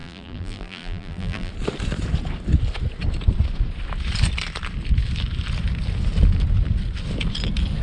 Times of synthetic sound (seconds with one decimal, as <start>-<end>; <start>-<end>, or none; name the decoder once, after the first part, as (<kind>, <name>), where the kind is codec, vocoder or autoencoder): 0.0-1.5 (vocoder, BigVGAN v2)